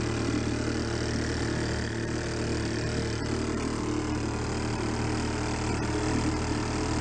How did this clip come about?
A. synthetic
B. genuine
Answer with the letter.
B